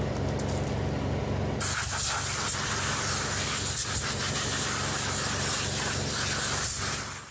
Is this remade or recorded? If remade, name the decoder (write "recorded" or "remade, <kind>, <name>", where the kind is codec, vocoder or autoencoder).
recorded